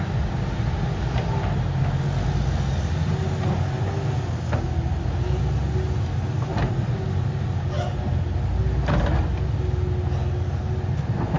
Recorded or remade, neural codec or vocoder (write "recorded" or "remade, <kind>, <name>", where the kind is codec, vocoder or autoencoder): recorded